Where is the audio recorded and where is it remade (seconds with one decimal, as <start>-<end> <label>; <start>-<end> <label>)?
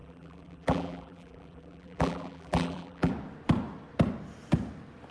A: 0.0-3.1 remade; 3.1-5.1 recorded